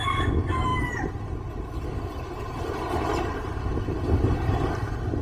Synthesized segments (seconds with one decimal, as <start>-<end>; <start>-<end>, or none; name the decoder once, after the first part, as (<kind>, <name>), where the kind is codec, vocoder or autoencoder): 0.7-3.6 (vocoder, BigVGAN v2)